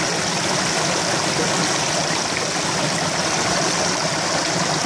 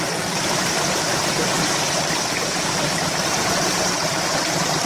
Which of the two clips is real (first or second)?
first